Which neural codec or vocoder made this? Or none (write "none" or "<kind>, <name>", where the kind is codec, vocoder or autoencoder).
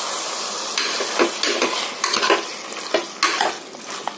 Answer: none